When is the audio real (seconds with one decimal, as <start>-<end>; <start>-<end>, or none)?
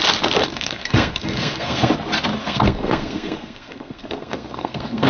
0.0-0.4; 1.9-2.4